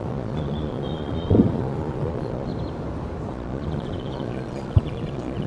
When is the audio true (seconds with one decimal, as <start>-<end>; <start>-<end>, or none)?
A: 2.5-3.3